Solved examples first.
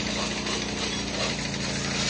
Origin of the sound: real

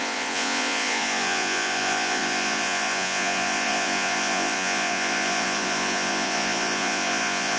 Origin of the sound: fake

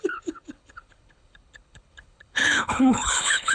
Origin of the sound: fake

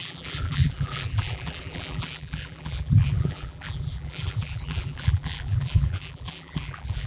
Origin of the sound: fake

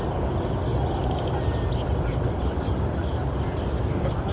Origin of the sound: real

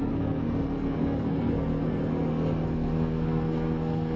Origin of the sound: fake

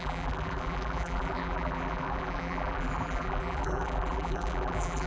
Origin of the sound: fake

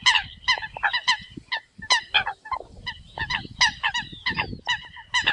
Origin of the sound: real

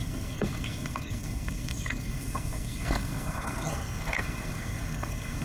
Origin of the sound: fake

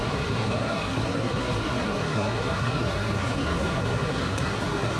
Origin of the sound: fake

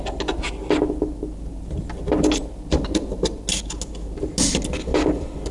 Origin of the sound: real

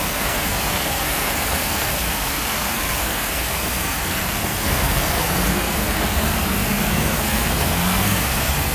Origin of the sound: fake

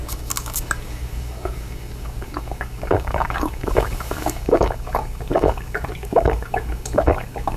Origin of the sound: fake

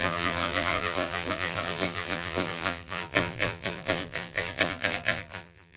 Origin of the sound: fake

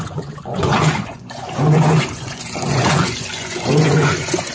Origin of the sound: fake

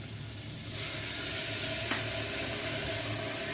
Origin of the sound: real